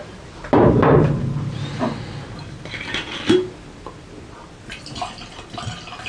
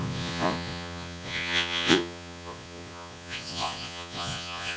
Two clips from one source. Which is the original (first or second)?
first